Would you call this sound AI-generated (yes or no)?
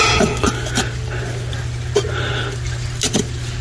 no